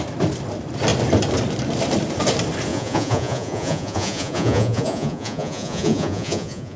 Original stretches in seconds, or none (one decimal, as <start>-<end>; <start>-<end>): 0.0-2.7